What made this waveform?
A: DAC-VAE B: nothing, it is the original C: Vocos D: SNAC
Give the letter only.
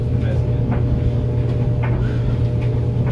B